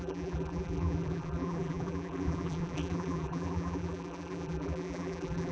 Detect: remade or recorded remade